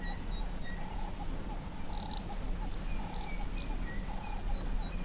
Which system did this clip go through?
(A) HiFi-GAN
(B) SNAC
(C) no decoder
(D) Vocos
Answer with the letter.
C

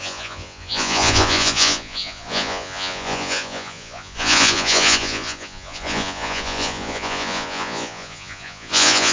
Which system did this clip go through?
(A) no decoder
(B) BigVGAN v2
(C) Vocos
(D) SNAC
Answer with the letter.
C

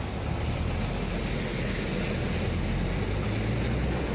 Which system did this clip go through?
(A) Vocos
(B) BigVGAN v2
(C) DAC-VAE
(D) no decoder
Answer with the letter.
D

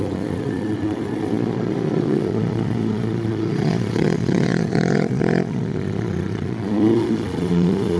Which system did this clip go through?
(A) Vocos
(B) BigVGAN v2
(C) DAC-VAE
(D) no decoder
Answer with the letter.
A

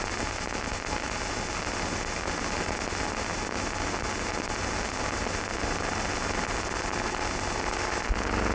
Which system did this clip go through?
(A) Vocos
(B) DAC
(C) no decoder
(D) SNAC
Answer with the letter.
C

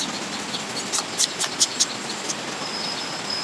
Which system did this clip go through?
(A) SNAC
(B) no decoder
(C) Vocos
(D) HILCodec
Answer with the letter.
B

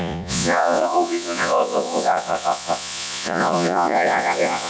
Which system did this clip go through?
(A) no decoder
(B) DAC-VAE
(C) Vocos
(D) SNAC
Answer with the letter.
C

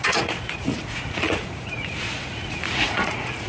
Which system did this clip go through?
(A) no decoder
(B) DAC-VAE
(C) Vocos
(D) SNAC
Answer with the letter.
C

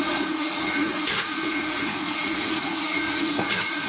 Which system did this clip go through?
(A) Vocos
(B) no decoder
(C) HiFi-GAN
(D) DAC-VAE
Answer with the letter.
A